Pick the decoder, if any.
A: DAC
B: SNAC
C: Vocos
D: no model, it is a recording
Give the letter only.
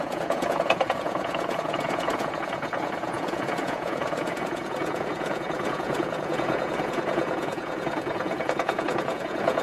C